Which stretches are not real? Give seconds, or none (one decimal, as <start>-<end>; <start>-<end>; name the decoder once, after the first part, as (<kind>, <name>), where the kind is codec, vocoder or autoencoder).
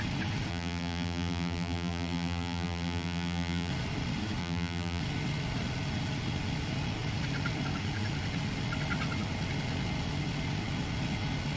0.5-3.7 (vocoder, BigVGAN v2); 4.4-5.0